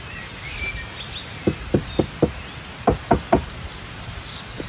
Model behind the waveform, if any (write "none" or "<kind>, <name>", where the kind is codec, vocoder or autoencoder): none